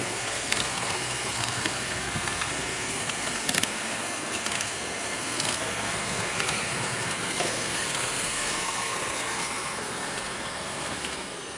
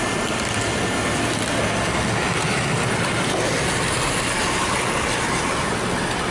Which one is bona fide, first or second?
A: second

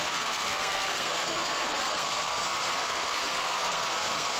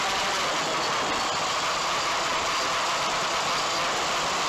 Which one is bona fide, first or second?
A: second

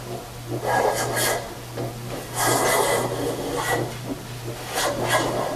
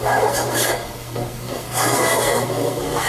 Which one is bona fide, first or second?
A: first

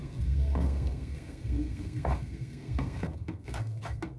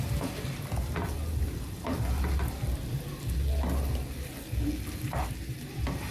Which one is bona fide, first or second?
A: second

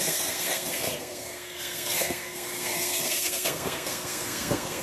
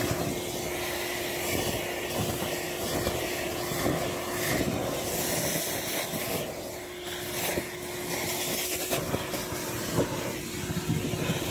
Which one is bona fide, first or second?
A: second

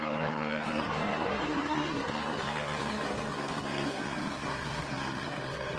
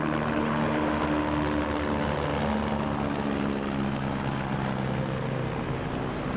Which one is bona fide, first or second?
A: second